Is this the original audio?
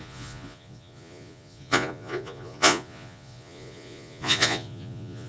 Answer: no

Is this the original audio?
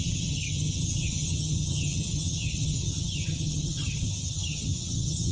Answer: no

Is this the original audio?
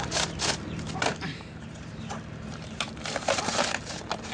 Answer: no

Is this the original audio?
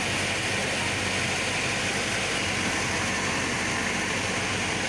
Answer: yes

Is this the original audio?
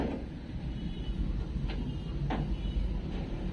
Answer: yes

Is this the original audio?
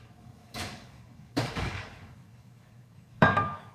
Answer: no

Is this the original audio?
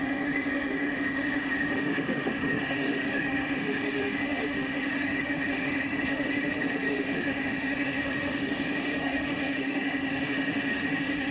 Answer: no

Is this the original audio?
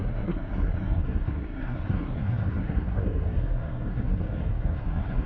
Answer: no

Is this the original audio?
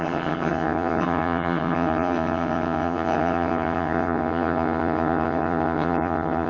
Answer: no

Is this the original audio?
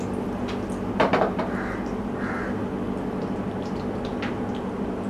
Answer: yes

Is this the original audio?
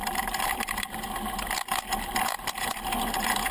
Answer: no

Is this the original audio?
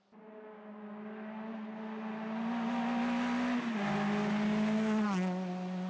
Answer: yes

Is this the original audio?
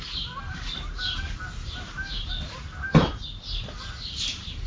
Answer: yes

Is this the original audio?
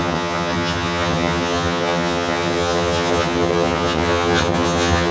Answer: no